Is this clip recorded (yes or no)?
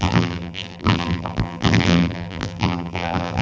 no